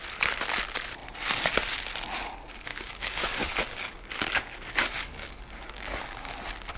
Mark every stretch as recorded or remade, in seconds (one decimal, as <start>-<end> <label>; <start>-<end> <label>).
0.0-2.7 recorded; 2.7-6.3 remade; 6.3-6.8 recorded